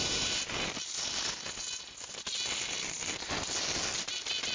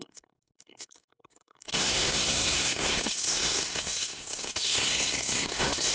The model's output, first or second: second